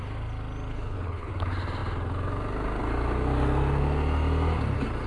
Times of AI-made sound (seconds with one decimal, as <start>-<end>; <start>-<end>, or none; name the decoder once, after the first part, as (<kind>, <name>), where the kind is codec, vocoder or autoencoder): 0.7-1.3 (codec, HILCodec)